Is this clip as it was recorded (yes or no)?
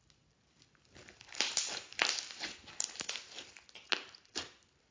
yes